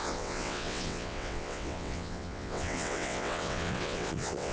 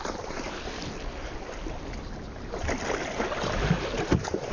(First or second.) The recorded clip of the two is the second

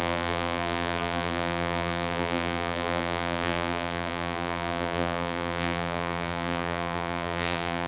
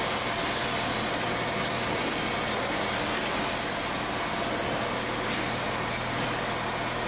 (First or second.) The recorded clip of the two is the second